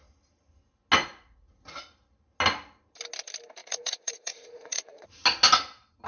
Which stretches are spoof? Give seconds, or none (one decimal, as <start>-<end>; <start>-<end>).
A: 1.0-1.9; 3.6-5.1